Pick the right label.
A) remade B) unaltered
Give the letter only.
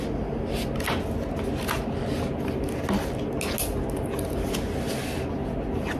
B